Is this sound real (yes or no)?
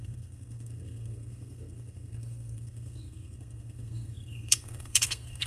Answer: no